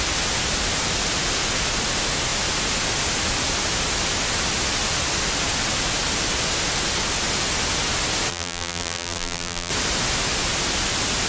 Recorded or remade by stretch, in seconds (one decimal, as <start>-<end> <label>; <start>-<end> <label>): 0.0-8.3 recorded; 8.3-9.7 remade; 9.7-11.3 recorded